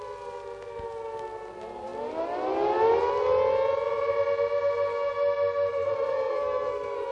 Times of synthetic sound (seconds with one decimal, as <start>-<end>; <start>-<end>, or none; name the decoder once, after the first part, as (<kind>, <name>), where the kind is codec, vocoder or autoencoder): 5.7-7.1 (codec, SNAC)